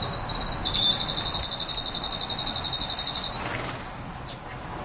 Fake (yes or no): no